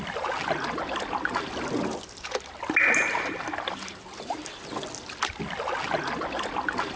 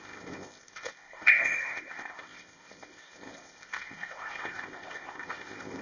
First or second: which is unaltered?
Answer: first